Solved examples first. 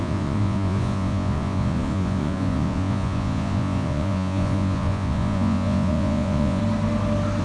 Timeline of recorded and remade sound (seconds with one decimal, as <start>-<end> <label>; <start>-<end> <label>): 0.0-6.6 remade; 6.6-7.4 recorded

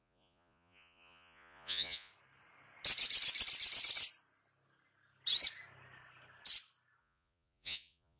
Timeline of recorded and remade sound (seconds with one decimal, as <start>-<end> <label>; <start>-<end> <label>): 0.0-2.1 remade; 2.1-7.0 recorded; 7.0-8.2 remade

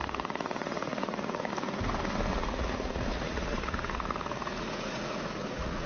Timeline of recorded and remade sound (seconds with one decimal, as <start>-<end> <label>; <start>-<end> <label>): 0.0-1.5 remade; 1.5-2.3 recorded; 2.3-5.9 remade